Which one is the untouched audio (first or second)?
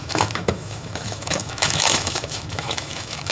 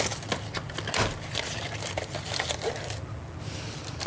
second